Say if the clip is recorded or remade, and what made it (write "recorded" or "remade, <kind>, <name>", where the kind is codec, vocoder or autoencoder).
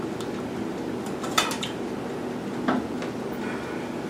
recorded